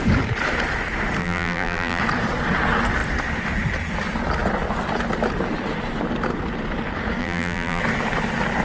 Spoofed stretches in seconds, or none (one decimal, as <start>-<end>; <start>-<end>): 1.2-2.0; 7.2-7.8